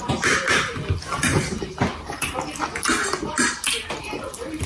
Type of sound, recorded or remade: recorded